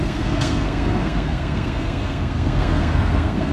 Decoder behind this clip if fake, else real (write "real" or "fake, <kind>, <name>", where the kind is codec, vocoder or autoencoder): fake, codec, SNAC